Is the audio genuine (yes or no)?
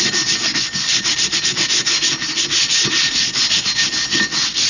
yes